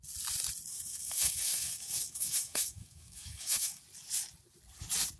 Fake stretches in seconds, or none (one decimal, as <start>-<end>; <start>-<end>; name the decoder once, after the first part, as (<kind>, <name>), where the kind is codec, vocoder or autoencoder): 0.7-3.8 (autoencoder, DAC-VAE)